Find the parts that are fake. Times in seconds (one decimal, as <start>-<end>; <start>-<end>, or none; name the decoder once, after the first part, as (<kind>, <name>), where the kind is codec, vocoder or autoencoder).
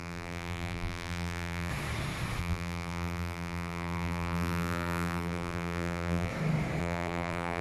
0.0-1.7 (vocoder, BigVGAN v2); 2.4-6.3; 6.8-7.6